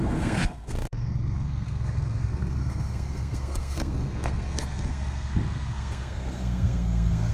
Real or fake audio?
fake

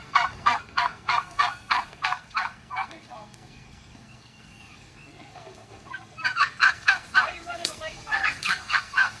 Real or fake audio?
fake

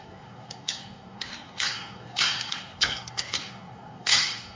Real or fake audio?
fake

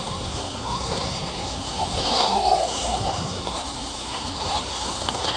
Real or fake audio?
fake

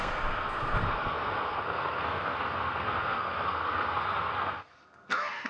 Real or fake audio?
fake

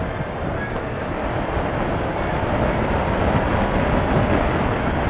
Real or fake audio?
real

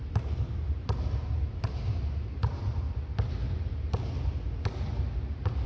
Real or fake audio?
real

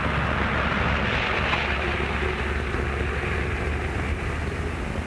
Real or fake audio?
real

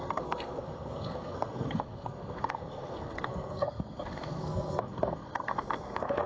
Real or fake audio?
fake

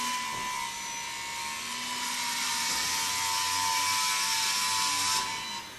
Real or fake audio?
real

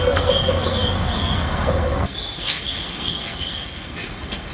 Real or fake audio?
fake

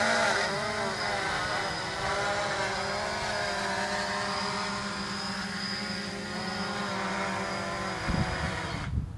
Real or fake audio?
real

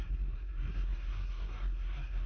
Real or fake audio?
fake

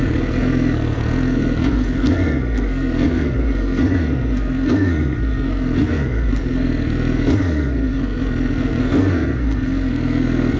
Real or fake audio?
fake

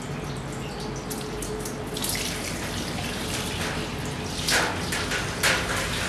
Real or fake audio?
real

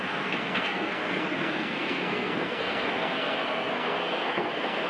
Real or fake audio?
fake